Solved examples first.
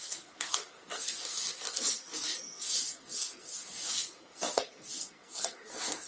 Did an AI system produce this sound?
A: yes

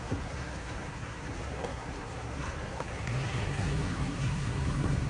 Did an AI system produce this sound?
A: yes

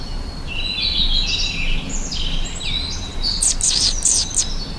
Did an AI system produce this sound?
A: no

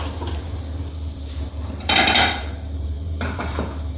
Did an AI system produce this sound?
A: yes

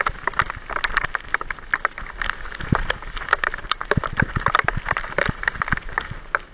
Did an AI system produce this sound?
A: no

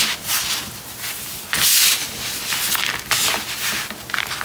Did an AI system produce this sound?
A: no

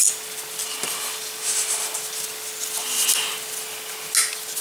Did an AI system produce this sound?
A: no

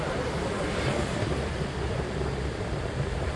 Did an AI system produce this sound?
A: no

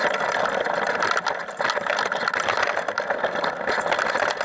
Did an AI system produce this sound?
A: no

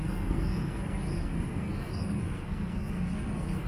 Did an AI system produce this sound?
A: yes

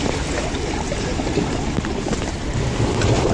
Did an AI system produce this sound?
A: no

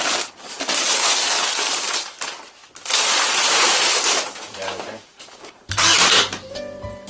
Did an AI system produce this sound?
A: yes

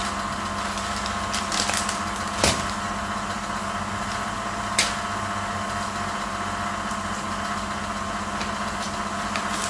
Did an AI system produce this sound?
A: no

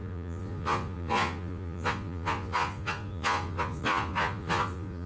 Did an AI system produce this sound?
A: yes